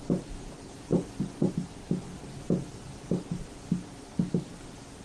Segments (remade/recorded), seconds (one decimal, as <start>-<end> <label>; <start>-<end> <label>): 0.0-0.9 recorded; 0.9-1.5 remade; 1.5-5.0 recorded